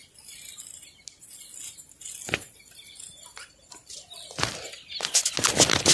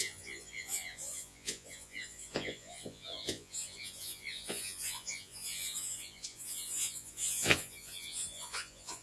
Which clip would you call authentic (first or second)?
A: first